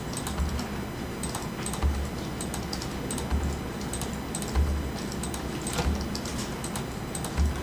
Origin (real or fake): real